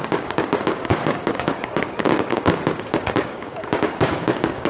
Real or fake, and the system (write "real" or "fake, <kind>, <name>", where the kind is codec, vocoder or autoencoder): fake, codec, DAC